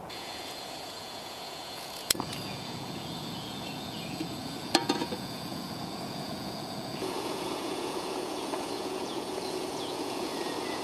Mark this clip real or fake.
fake